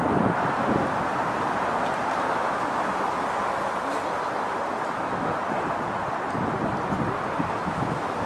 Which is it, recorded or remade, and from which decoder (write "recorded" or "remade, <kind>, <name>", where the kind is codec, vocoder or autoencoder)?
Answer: recorded